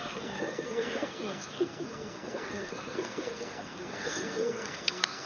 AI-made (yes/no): yes